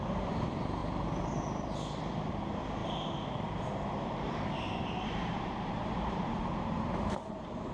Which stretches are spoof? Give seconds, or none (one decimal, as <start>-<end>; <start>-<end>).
0.0-0.8; 2.3-7.7